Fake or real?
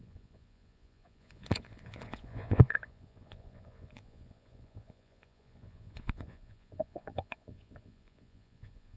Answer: fake